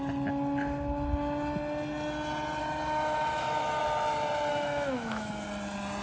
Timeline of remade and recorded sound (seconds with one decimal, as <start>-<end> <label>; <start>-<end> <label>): 0.0-2.6 recorded; 2.6-3.8 remade; 3.8-4.5 recorded; 4.5-5.3 remade; 5.3-6.0 recorded